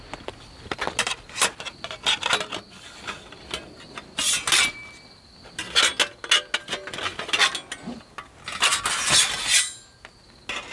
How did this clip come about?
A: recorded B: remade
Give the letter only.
A